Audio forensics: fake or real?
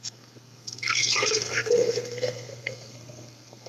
fake